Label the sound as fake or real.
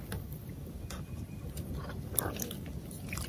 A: fake